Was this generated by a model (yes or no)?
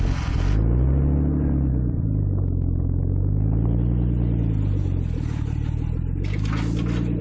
no